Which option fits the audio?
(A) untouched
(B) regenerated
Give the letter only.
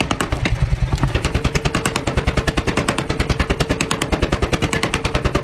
A